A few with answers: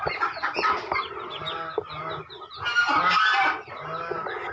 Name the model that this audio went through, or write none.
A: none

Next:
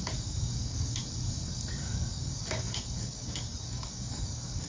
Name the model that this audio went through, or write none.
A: codec, DAC